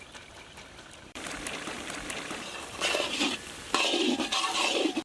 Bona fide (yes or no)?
no